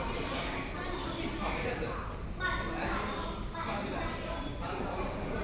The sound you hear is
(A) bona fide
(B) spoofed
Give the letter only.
A